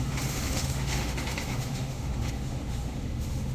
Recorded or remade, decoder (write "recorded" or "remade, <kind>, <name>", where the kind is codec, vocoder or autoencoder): remade, autoencoder, DAC-VAE